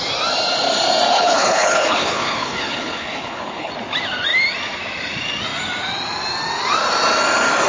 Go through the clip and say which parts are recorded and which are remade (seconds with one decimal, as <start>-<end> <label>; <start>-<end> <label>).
0.0-1.1 recorded; 1.1-3.7 remade; 3.7-7.7 recorded